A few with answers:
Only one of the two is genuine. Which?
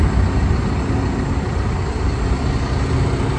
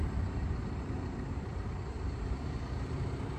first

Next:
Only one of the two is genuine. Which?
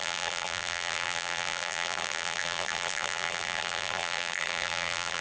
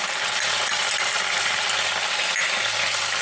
second